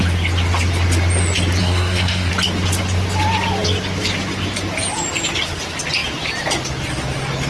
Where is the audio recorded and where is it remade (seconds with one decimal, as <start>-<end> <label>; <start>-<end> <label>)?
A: 0.0-1.6 recorded; 1.6-2.3 remade; 2.3-7.5 recorded